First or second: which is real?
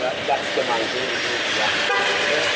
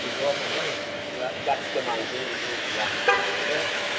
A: first